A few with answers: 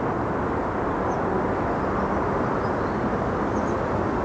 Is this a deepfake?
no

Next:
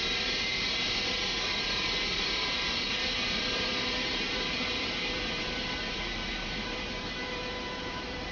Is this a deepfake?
yes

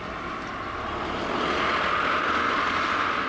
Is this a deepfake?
no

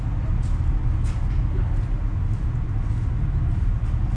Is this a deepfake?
no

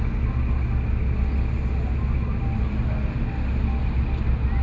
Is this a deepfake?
no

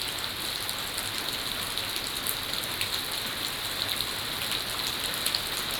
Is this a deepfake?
no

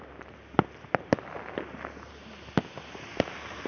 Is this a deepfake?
no